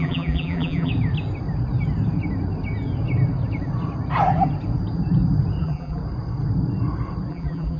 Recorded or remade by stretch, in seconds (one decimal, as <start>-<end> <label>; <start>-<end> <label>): 0.0-0.9 remade; 0.9-5.6 recorded; 5.6-6.0 remade; 6.0-7.3 recorded; 7.3-7.8 remade

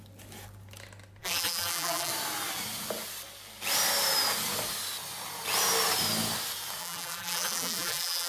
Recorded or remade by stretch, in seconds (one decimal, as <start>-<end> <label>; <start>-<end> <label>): 0.0-1.2 recorded; 1.2-2.1 remade; 2.1-6.8 recorded; 6.8-8.3 remade

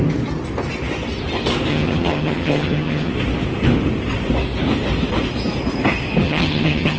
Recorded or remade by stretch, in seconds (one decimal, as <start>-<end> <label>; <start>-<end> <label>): 0.0-1.7 recorded; 1.7-3.1 remade; 3.1-6.2 recorded; 6.2-7.0 remade

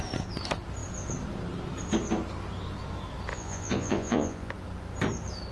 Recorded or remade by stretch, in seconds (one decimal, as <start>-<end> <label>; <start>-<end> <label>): 0.0-3.3 recorded; 3.3-4.5 remade; 4.5-5.5 recorded

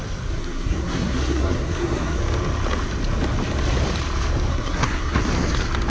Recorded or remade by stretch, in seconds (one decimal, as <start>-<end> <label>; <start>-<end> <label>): 0.0-0.4 recorded; 0.4-2.2 remade; 2.2-4.5 recorded; 4.5-5.2 remade; 5.2-5.9 recorded

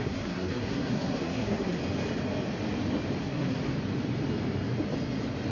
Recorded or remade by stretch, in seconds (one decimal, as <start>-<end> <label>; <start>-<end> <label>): 0.0-1.8 remade; 1.8-3.2 recorded; 3.2-3.6 remade; 3.6-5.5 recorded

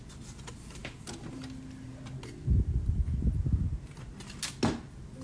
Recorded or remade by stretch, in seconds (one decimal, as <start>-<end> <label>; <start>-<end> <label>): 0.0-5.2 recorded

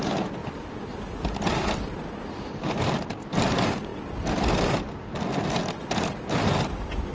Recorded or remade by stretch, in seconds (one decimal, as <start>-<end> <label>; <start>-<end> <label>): 0.0-7.1 recorded